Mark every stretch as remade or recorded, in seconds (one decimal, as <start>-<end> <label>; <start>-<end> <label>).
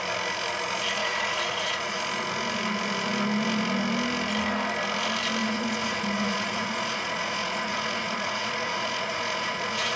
0.0-1.0 recorded; 1.0-2.0 remade; 2.0-5.4 recorded; 5.4-10.0 remade